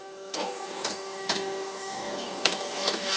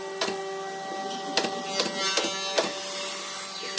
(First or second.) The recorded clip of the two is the second